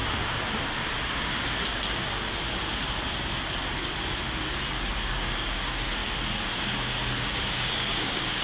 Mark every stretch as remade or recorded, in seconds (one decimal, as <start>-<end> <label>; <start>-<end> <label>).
0.0-5.0 recorded; 5.0-6.0 remade; 6.0-7.2 recorded; 7.2-8.4 remade